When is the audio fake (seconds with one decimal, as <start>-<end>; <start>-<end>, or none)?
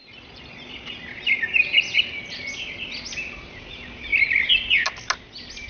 none